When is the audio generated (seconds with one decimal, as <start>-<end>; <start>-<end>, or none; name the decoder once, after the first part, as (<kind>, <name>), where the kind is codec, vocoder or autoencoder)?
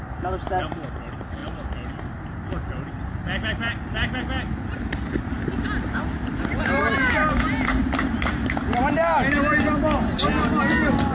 none